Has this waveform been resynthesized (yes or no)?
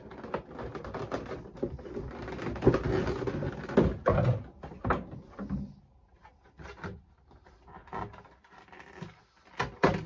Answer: no